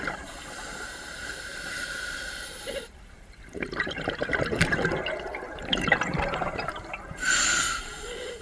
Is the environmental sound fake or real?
fake